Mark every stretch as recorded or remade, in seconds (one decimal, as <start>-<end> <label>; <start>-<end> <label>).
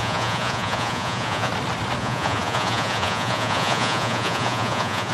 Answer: 0.0-1.5 remade; 1.5-2.0 recorded; 2.0-5.1 remade